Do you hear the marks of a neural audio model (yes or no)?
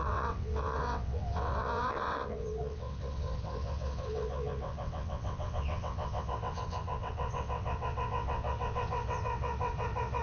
yes